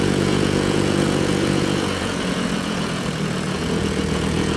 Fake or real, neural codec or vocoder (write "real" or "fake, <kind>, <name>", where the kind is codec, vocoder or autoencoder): fake, vocoder, Vocos